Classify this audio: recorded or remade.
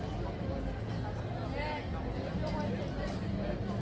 recorded